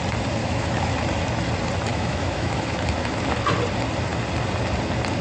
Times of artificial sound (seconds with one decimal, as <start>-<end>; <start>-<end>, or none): 0.4-0.9; 1.9-3.2